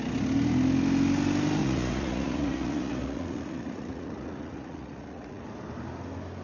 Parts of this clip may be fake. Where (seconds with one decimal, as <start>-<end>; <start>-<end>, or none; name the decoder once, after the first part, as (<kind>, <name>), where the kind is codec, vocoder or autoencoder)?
1.6-5.4 (vocoder, Vocos)